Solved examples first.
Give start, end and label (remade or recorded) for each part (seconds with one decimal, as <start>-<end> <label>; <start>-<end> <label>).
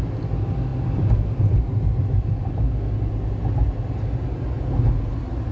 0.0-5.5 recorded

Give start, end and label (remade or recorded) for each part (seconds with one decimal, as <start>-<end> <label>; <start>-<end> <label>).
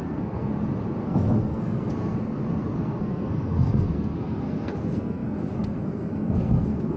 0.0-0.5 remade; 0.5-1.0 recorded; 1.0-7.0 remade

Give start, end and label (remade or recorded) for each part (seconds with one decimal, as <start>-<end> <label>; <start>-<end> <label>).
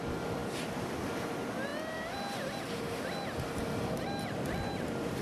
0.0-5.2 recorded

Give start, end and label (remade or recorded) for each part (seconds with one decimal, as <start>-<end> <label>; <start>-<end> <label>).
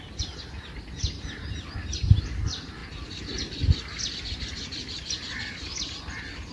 0.0-6.5 recorded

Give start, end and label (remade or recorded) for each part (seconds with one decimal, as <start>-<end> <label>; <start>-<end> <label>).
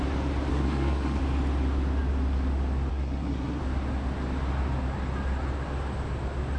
0.0-0.5 recorded; 0.5-1.2 remade; 1.2-2.9 recorded; 2.9-3.6 remade; 3.6-6.6 recorded